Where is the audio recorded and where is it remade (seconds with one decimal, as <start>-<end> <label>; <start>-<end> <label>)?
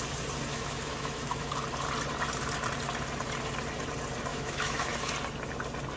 0.0-0.5 recorded; 0.5-1.5 remade; 1.5-4.3 recorded; 4.3-5.1 remade; 5.1-6.0 recorded